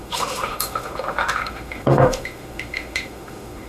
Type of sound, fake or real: fake